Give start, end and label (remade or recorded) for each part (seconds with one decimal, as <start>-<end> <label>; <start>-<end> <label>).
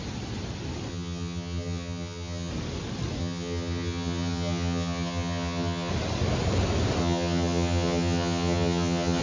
0.0-0.9 recorded; 0.9-2.5 remade; 2.5-3.2 recorded; 3.2-5.9 remade; 5.9-7.0 recorded; 7.0-9.2 remade